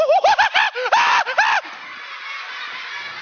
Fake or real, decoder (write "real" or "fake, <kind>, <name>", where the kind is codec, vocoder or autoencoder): real